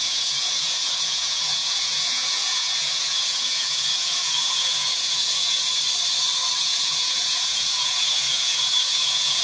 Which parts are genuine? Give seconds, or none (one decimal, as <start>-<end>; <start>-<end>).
5.8-6.6